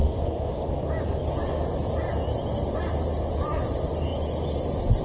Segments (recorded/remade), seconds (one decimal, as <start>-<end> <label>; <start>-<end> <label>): 0.0-0.6 remade; 0.6-5.0 recorded